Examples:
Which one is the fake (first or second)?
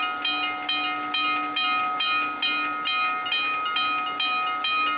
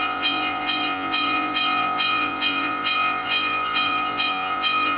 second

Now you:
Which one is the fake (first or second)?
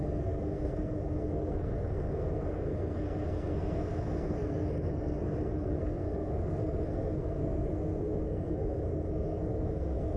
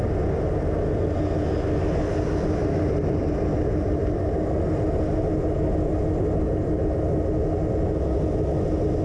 first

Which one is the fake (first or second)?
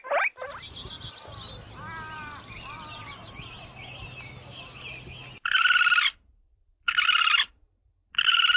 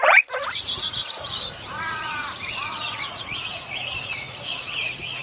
second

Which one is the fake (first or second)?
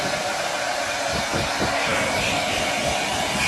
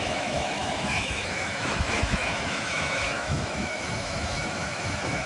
second